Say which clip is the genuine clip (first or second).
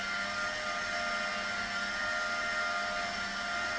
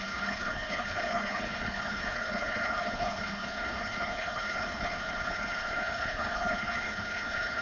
first